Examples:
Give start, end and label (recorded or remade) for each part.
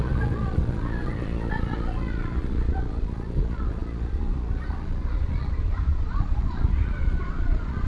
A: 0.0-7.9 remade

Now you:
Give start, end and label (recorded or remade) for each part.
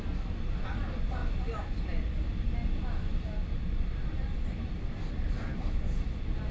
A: 0.0-6.5 recorded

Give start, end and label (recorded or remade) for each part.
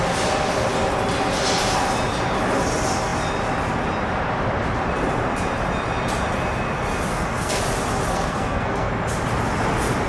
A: 0.0-7.1 recorded; 7.1-7.6 remade; 7.6-8.1 recorded; 8.1-8.9 remade; 8.9-10.1 recorded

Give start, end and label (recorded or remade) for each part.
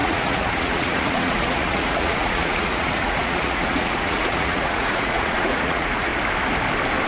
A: 0.0-6.1 remade; 6.1-7.1 recorded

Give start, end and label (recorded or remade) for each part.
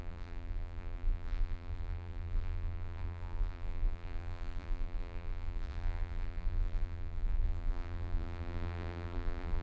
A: 0.0-9.6 remade